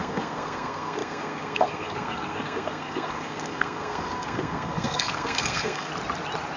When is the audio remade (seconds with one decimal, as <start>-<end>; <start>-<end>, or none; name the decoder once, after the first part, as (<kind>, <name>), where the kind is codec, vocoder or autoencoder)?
0.0-5.9 (codec, SNAC)